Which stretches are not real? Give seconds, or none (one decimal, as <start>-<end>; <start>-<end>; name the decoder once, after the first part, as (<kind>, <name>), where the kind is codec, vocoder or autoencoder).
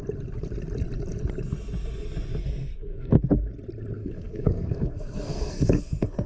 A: 2.4-3.2 (codec, SNAC); 4.0-6.3